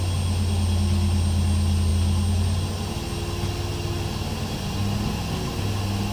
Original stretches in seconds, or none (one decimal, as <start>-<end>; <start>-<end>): 0.0-6.1